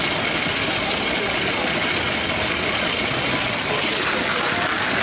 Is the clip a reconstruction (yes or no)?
no